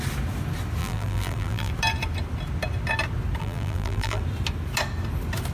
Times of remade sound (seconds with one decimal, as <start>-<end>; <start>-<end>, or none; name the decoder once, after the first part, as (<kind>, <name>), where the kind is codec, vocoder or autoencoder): 0.8-1.7 (vocoder, BigVGAN v2); 3.4-4.2